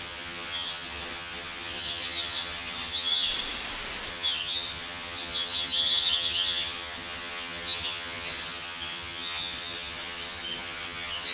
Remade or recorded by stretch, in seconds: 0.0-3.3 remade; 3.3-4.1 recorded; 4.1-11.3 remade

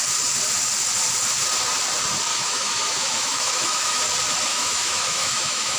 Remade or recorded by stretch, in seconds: 0.0-2.3 recorded; 2.3-4.0 remade; 4.0-4.5 recorded; 4.5-5.8 remade

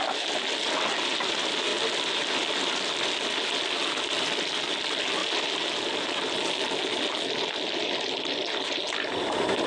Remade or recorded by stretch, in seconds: 0.0-9.7 recorded

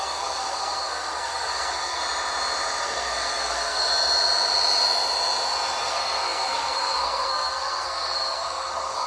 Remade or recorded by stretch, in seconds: 0.0-2.0 remade; 2.0-2.8 recorded; 2.8-3.9 remade; 3.9-5.8 recorded; 5.8-9.1 remade

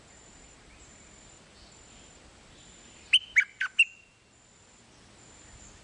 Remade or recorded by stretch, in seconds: 0.0-5.8 recorded